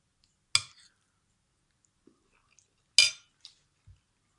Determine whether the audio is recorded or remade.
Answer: recorded